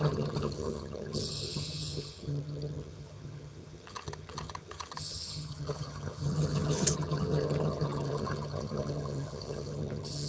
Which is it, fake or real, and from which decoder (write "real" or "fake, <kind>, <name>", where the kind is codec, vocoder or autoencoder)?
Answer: fake, vocoder, HiFi-GAN